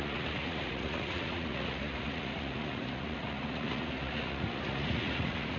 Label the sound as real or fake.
fake